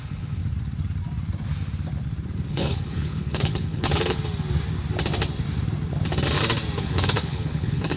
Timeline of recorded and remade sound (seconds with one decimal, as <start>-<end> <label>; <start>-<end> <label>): 0.0-0.4 remade; 0.4-2.5 recorded; 2.5-4.2 remade; 4.2-6.8 recorded; 6.8-8.0 remade